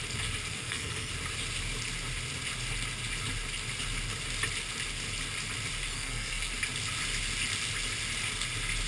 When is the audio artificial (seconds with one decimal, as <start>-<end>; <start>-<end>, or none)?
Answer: 0.5-1.1; 5.9-6.5